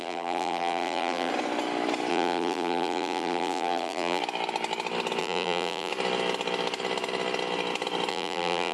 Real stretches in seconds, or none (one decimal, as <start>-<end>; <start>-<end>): 1.3-2.1; 4.2-5.2; 5.9-8.1